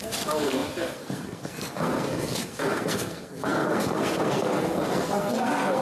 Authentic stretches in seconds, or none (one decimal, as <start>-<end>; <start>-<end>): none